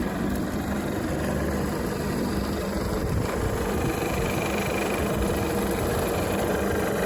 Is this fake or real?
fake